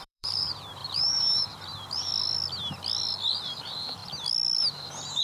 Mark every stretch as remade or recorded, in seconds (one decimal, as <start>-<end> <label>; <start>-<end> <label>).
0.0-2.1 remade; 2.1-3.6 recorded; 3.6-4.0 remade; 4.0-4.6 recorded; 4.6-5.2 remade